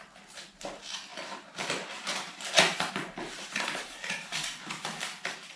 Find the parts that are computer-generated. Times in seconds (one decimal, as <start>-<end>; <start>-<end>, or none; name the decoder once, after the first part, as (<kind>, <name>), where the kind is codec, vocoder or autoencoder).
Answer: 0.0-5.6 (vocoder, BigVGAN v2)